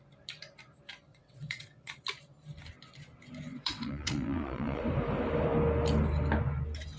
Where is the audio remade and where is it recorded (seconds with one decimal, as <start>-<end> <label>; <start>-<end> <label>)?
0.0-1.1 recorded; 1.1-1.9 remade; 1.9-3.5 recorded; 3.5-4.8 remade; 4.8-7.0 recorded